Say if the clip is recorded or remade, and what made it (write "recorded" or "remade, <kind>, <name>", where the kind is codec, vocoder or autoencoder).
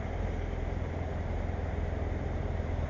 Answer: remade, vocoder, BigVGAN v2